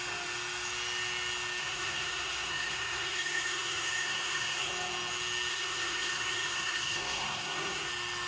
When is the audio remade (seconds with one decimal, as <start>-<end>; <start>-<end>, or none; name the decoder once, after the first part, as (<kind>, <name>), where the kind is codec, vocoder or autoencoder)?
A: 1.6-4.7 (codec, SNAC); 5.5-7.9